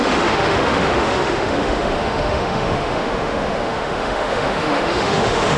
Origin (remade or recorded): remade